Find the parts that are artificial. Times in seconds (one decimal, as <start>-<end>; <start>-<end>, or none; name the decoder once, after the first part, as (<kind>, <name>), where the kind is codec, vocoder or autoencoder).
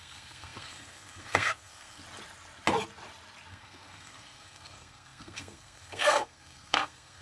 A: 0.0-2.0 (codec, SNAC); 3.5-7.2